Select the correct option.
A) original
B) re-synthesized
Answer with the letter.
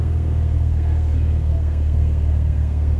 B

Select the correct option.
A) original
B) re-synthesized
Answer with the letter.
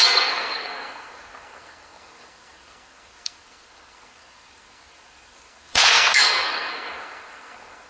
B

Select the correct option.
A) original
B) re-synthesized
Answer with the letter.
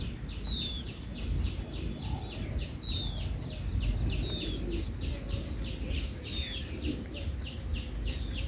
A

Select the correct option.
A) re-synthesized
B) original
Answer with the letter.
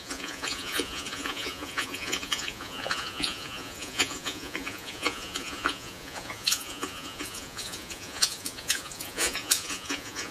A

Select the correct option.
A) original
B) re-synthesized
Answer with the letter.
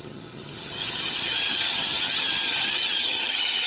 B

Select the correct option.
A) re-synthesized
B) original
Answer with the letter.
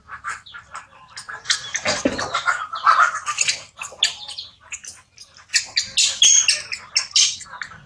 B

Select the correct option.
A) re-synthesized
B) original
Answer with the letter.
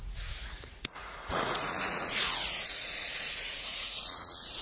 A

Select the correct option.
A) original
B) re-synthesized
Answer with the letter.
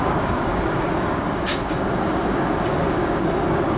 B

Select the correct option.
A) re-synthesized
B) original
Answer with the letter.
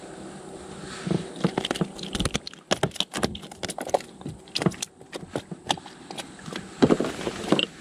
B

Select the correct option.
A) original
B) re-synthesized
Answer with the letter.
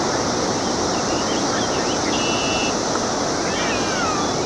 A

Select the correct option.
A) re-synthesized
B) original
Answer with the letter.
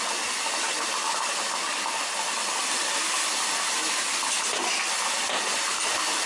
A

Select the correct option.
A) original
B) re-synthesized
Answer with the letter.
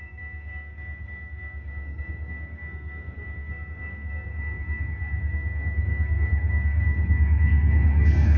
B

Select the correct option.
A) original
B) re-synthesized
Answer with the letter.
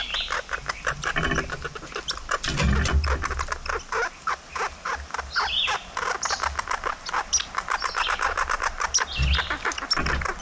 A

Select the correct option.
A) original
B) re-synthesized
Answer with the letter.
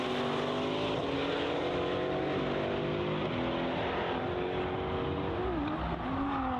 A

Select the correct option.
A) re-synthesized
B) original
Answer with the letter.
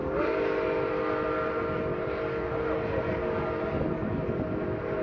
B